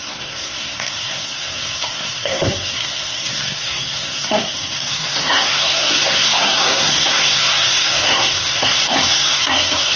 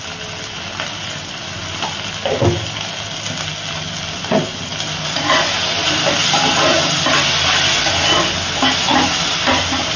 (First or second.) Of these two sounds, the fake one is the first